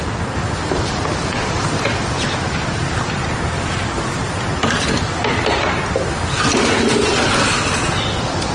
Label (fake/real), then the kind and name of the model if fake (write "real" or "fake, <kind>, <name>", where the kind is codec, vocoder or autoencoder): real